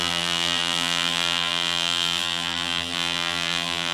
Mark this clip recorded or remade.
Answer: remade